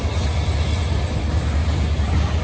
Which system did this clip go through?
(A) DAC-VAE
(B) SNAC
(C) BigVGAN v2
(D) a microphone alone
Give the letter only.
D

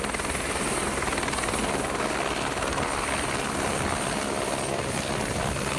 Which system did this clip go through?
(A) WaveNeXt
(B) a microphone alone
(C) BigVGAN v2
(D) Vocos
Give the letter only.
B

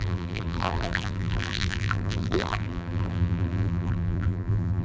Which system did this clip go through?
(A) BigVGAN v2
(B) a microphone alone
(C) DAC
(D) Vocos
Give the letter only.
A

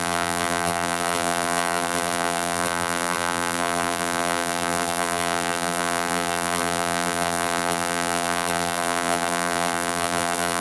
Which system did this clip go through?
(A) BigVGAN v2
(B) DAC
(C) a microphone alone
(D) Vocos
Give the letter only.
A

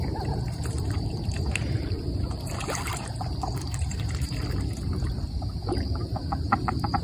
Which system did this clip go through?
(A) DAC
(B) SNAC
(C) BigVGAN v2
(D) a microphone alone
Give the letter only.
C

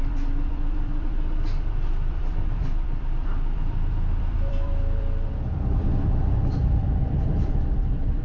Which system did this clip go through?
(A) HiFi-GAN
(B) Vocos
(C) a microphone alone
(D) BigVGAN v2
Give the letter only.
D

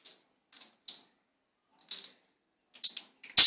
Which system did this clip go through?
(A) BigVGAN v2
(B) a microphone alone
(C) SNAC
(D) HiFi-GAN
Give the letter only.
B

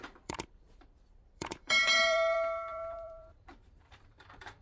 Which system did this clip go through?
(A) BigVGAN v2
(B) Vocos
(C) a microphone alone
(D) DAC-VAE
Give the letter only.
A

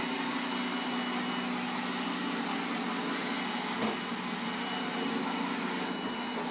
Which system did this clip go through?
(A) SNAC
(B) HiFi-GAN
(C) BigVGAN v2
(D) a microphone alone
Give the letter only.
D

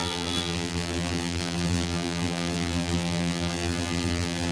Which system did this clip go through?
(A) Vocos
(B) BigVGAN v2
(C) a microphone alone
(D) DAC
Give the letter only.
B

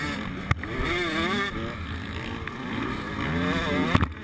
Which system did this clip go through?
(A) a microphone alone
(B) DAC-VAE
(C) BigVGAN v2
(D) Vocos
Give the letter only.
A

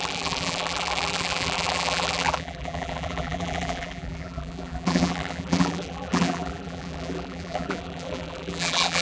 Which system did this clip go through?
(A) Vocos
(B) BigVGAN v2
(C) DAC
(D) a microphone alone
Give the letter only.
B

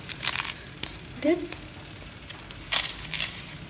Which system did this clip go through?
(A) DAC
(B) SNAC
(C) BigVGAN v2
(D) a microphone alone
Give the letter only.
C